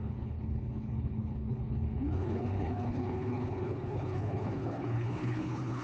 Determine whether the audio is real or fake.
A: fake